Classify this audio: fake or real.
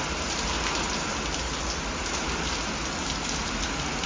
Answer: real